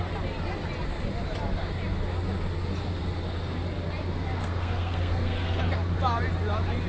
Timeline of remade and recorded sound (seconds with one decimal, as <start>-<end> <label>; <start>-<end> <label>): 0.0-4.4 recorded; 4.4-5.6 remade; 5.6-6.9 recorded